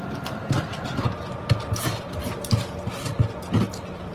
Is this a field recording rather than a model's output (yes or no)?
yes